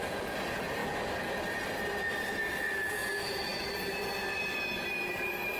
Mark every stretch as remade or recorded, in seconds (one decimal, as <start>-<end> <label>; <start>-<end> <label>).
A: 0.0-0.8 remade; 0.8-1.5 recorded; 1.5-3.5 remade; 3.5-5.1 recorded; 5.1-5.6 remade